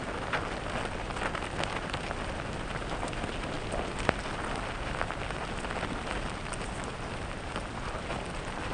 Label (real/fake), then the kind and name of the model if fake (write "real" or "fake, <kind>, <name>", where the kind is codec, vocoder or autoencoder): real